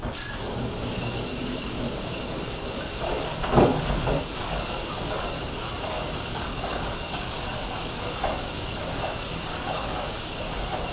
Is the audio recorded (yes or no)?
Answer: no